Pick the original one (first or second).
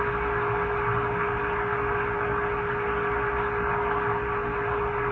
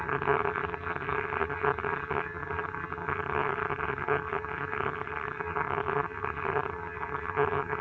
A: first